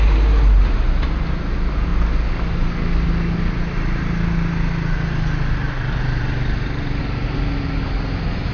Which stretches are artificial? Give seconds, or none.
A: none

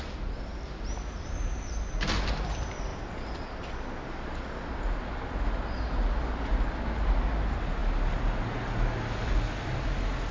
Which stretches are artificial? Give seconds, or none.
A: none

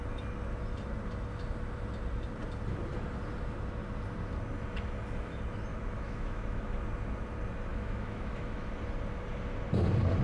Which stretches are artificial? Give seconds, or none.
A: 5.7-6.8 (autoencoder, DAC-VAE); 7.7-8.7

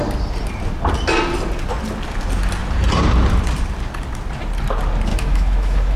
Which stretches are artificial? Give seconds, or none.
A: 5.1-6.0 (autoencoder, DAC-VAE)

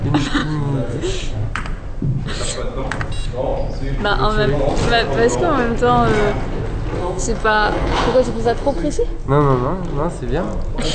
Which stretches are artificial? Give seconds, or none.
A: 0.4-1.0 (autoencoder, DAC-VAE); 7.0-9.0

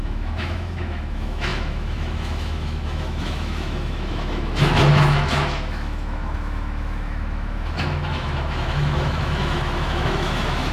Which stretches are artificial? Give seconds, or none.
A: 0.0-10.7 (autoencoder, DAC-VAE)